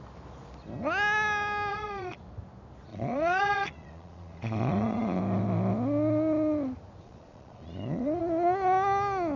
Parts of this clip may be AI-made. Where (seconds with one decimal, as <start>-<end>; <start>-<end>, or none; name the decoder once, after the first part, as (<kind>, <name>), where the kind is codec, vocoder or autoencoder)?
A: 1.7-2.2 (vocoder, Vocos); 2.9-5.2; 7.0-8.2